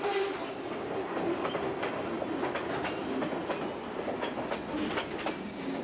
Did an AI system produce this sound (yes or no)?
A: no